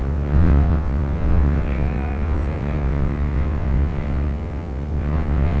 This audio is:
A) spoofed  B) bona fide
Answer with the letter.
A